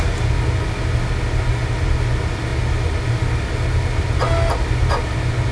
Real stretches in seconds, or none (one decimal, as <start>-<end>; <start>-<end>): 0.0-5.5